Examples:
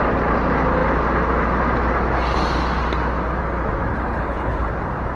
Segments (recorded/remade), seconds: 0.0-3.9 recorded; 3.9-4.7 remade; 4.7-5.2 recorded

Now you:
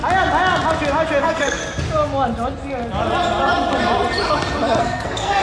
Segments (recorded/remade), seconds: 0.0-1.2 recorded; 1.2-1.6 remade; 1.6-4.8 recorded; 4.8-5.4 remade